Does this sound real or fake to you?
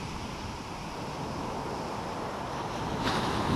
real